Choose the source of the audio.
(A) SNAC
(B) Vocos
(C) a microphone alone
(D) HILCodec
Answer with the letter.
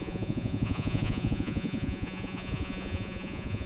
B